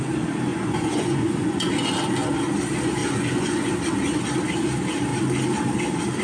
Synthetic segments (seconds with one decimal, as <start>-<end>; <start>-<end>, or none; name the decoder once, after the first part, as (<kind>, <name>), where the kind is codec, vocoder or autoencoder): 0.5-1.7 (vocoder, Vocos); 3.0-3.7